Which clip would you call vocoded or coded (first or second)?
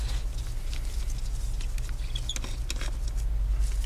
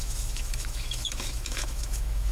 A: second